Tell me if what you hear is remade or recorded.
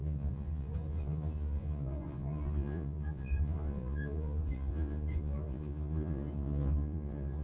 remade